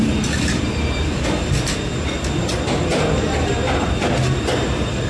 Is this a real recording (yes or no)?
yes